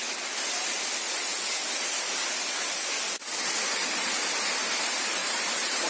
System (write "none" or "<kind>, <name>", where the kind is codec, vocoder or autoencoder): none